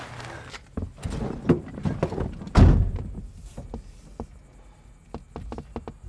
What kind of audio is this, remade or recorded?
recorded